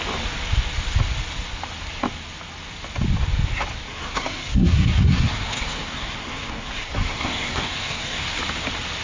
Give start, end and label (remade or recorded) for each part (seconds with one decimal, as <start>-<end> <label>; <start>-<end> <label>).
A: 0.0-3.9 recorded; 3.9-8.2 remade; 8.2-9.0 recorded